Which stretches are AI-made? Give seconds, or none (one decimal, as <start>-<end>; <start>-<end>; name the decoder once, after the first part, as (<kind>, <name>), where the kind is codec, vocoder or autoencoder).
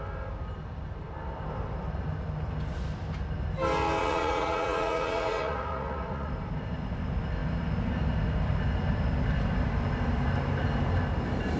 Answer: 4.0-6.3 (vocoder, Vocos)